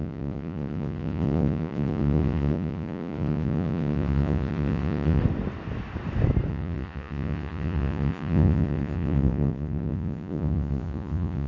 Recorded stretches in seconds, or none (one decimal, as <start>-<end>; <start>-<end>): 5.2-6.5